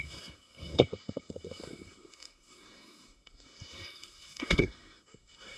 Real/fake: fake